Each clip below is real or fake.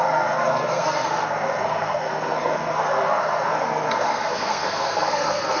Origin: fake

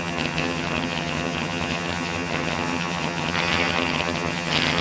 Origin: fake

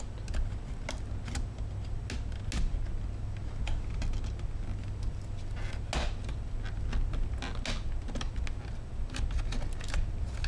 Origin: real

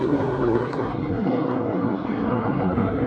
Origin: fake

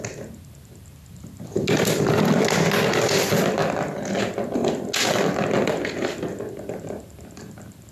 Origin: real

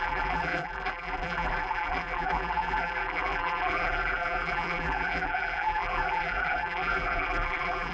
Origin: fake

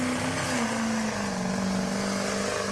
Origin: real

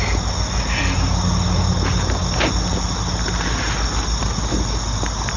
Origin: real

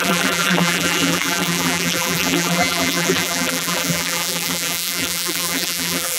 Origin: fake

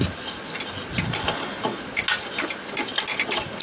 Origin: real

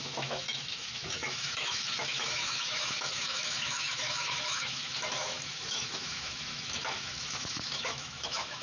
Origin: fake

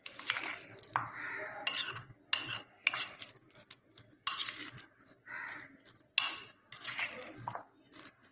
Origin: real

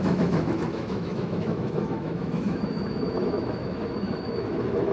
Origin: fake